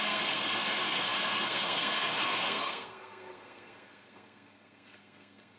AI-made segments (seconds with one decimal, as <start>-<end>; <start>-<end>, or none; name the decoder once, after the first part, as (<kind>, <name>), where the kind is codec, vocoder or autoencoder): 0.0-5.6 (codec, SNAC)

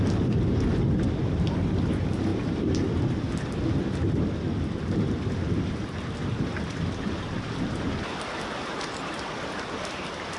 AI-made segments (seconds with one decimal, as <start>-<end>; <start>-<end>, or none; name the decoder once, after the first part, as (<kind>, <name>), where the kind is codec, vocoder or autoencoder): none